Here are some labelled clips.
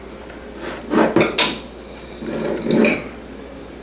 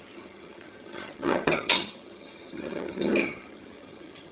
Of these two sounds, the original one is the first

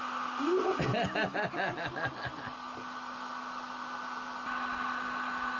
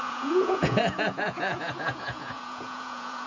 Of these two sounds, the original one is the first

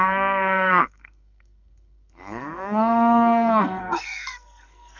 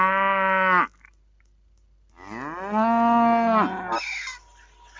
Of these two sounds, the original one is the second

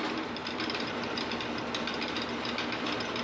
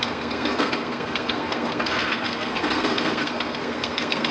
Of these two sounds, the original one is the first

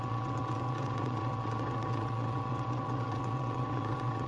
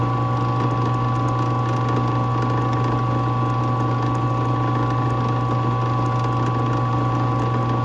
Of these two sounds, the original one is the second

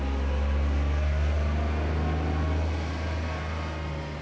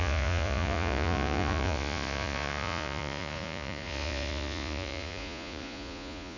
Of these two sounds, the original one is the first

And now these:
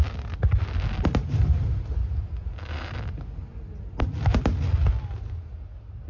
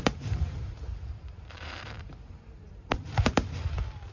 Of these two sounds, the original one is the first